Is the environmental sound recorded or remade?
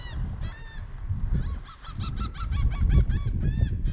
recorded